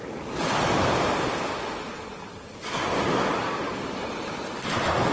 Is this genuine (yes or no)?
yes